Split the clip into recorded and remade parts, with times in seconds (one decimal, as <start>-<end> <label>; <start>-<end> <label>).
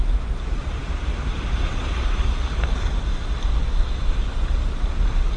0.0-5.4 recorded